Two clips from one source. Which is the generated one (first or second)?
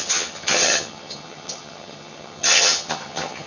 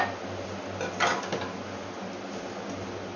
first